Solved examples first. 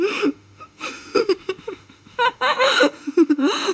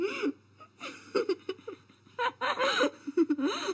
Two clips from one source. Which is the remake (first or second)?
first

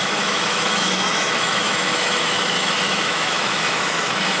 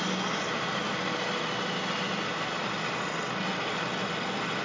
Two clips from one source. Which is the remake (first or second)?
first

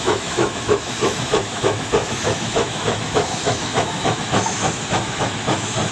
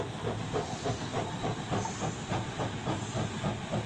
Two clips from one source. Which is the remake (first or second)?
first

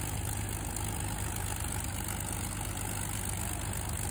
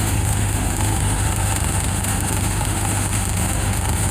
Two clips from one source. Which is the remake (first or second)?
second